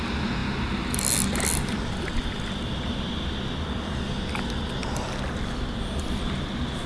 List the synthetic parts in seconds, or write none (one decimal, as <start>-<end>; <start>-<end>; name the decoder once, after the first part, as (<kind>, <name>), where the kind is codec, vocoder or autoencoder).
1.6-3.1 (vocoder, BigVGAN v2)